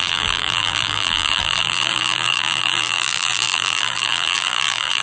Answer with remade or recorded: remade